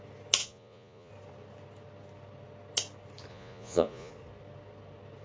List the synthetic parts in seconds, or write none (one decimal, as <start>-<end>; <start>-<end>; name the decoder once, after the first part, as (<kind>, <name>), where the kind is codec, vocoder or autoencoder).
0.4-1.1 (vocoder, Vocos); 3.3-4.1